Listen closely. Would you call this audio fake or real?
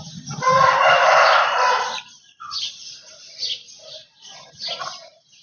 fake